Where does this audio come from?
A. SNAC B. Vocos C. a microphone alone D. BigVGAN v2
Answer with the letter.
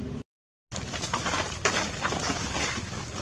C